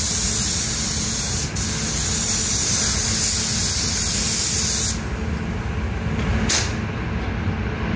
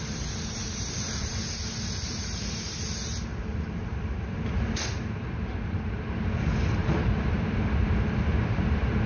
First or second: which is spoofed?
second